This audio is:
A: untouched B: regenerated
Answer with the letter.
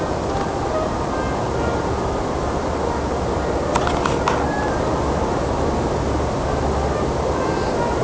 A